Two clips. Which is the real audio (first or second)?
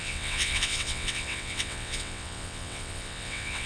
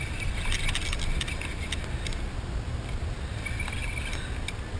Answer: second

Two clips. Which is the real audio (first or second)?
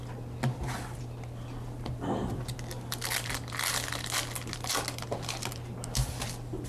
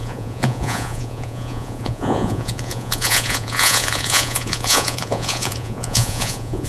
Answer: first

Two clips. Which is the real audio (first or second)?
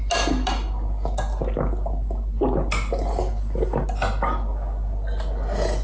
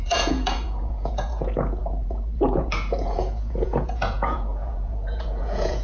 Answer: first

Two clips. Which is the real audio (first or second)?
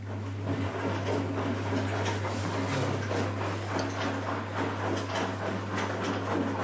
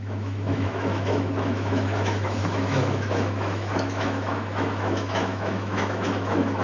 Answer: first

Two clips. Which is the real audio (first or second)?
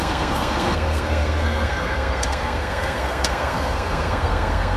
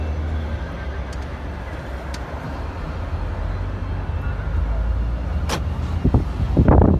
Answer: second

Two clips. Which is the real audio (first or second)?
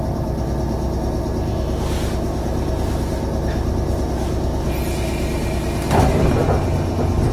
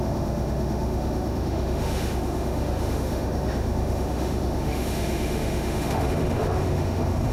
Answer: first